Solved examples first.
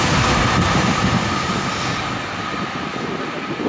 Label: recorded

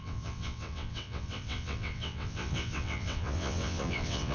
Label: remade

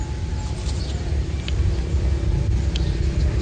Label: recorded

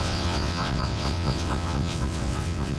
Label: remade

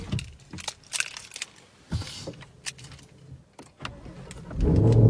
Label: recorded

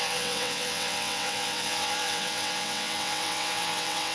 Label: remade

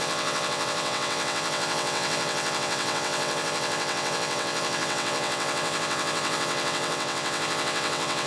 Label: remade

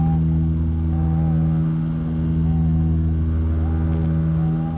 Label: recorded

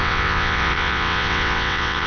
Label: remade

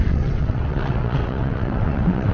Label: remade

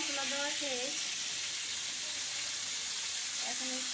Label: recorded